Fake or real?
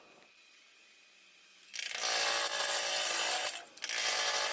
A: real